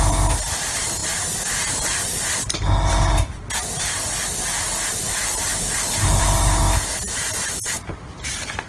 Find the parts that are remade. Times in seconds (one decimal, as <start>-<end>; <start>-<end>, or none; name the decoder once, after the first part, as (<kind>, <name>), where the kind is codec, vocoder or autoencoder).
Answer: none

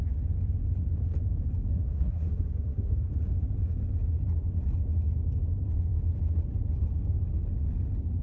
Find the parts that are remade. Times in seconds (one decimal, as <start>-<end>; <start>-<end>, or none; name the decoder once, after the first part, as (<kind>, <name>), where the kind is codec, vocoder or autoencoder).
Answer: 1.7-3.1 (codec, SNAC)

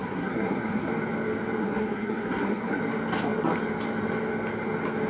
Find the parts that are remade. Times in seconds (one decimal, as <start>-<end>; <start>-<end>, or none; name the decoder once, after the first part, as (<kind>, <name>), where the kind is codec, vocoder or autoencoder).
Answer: 0.0-0.9 (codec, SNAC); 1.6-2.8